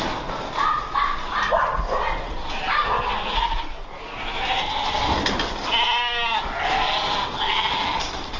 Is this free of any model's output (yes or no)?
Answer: yes